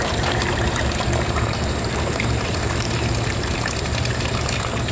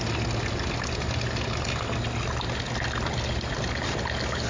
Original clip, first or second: second